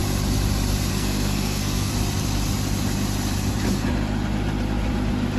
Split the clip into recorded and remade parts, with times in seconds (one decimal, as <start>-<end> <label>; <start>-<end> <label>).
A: 0.0-0.9 recorded; 0.9-1.9 remade; 1.9-5.4 recorded